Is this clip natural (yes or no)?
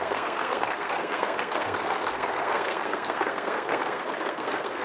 no